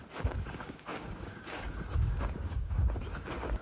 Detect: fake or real fake